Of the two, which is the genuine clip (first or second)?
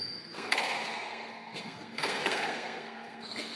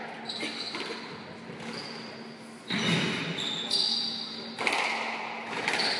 second